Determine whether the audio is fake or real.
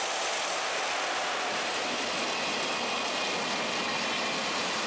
real